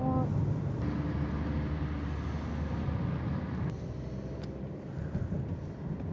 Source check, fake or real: real